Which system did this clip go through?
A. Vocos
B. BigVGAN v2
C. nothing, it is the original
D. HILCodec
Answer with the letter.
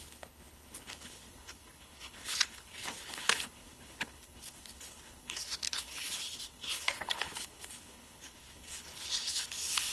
D